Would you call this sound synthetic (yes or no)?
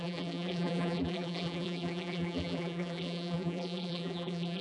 yes